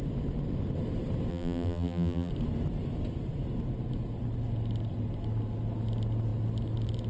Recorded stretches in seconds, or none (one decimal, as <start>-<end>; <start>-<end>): 0.0-1.3; 2.3-7.1